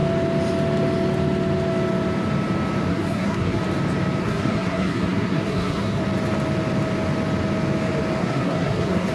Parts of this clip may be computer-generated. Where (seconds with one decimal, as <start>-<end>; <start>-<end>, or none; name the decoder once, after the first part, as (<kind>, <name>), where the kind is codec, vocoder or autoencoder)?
2.9-3.6 (codec, SNAC); 4.2-6.0; 8.2-9.1